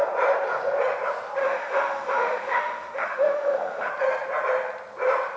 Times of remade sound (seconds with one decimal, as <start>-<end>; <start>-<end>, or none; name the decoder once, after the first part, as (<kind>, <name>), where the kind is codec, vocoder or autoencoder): 1.4-3.9 (autoencoder, DAC-VAE)